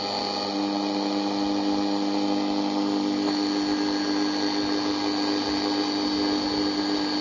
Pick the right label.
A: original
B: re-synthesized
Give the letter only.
A